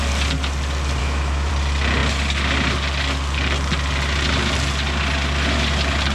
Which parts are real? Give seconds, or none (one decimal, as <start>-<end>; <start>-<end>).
0.0-1.0; 1.5-6.1